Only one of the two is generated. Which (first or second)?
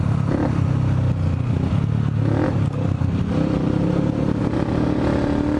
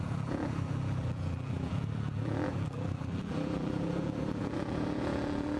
second